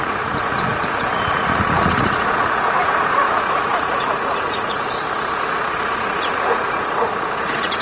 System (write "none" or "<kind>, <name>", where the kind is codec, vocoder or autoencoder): vocoder, Vocos